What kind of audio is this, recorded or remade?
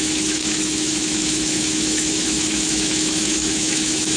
remade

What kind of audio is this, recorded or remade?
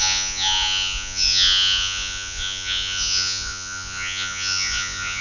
remade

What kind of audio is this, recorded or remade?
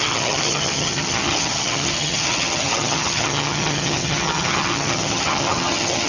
remade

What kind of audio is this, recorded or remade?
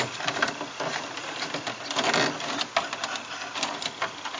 recorded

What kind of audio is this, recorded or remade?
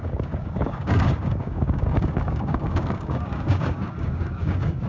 remade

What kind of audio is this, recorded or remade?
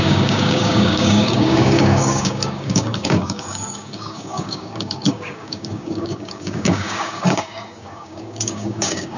remade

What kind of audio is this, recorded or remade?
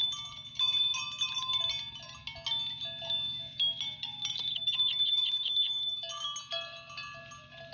recorded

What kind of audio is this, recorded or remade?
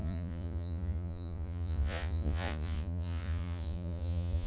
remade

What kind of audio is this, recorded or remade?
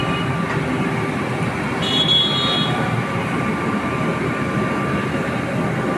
recorded